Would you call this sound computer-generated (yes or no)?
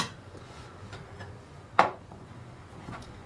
yes